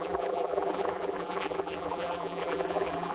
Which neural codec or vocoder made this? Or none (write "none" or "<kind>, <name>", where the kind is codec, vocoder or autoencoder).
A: vocoder, BigVGAN v2